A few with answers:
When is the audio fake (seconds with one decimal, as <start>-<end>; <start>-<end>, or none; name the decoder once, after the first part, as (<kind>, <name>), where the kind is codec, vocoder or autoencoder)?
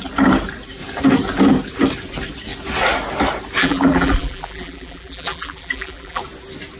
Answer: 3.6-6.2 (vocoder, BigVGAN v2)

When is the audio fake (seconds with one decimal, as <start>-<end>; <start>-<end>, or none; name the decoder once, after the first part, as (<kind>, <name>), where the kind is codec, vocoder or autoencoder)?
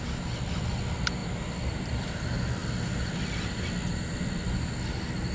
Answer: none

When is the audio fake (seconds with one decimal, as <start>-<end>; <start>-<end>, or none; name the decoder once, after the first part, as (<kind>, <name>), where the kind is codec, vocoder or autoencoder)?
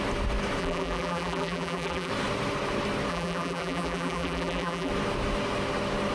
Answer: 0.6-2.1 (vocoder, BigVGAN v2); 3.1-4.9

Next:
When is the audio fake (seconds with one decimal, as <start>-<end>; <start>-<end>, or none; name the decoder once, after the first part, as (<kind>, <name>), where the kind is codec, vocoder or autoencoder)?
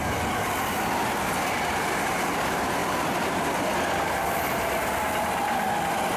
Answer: 2.8-3.4 (vocoder, BigVGAN v2)